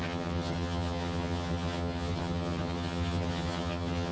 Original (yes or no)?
no